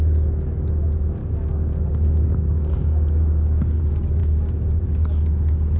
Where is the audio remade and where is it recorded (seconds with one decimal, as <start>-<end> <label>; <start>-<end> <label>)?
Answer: 0.0-1.2 recorded; 1.2-3.8 remade; 3.8-4.2 recorded; 4.2-4.8 remade; 4.8-5.8 recorded